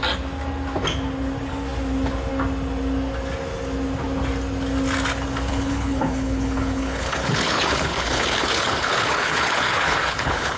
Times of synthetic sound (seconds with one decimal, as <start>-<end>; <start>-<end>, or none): 5.5-10.6